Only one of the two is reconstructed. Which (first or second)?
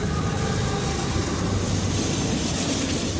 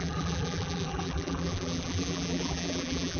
second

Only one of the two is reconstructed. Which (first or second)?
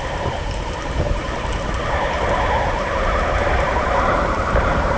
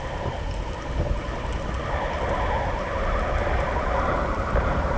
first